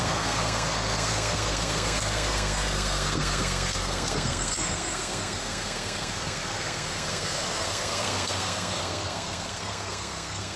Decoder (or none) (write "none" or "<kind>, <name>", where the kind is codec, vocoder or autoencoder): codec, SNAC